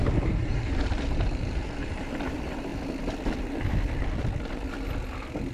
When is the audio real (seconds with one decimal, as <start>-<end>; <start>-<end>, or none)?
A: 2.7-5.5